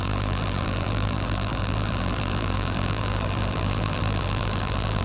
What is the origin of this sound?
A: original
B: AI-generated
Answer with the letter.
B